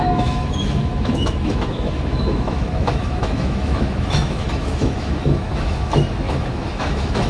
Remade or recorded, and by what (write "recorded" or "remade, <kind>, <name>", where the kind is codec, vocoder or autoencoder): remade, autoencoder, DAC-VAE